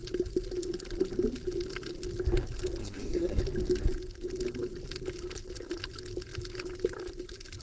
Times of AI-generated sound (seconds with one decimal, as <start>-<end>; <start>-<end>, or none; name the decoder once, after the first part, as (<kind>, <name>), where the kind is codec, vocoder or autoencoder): 2.8-3.4 (codec, SNAC)